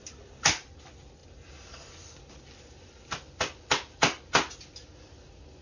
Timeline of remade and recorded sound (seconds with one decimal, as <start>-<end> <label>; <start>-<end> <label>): 0.0-5.6 recorded